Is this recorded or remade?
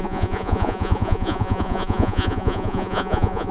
remade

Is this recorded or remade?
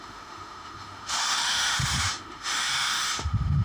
remade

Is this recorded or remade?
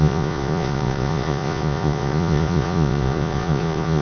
remade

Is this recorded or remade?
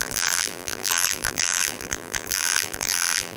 remade